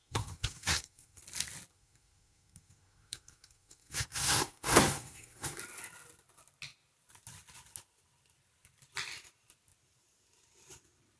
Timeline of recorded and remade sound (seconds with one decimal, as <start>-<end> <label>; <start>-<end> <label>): 0.0-1.2 remade; 1.2-1.7 recorded; 1.7-5.6 remade; 5.6-11.2 recorded